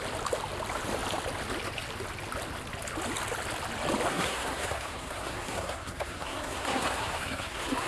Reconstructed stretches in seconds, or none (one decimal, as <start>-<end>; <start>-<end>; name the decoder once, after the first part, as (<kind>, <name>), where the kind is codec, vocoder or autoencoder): 4.1-7.9 (codec, SNAC)